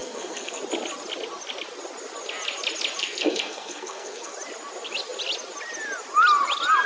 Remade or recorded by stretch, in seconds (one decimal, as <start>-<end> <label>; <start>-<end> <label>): 0.0-0.6 remade; 0.6-3.0 recorded; 3.0-4.3 remade; 4.3-6.9 recorded